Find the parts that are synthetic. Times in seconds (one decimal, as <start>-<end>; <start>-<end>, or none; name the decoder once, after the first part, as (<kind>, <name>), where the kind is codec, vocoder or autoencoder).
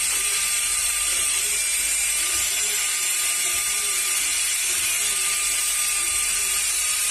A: 0.7-1.4 (vocoder, BigVGAN v2); 6.0-7.1